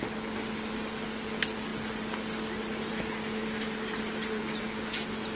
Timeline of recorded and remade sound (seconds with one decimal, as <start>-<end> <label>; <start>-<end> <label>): 0.0-5.4 recorded